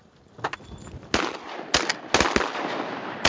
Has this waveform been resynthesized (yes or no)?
no